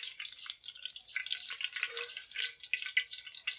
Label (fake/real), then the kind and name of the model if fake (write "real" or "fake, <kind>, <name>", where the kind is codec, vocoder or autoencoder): real